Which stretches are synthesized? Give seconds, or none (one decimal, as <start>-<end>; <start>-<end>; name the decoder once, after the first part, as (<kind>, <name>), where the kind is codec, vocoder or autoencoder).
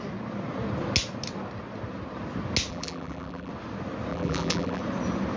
2.7-3.5 (vocoder, BigVGAN v2); 4.1-4.8